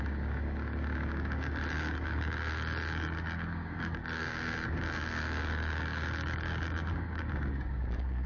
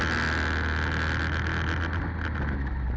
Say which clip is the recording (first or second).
second